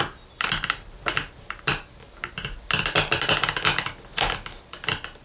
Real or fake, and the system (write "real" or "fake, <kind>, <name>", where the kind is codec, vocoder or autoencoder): real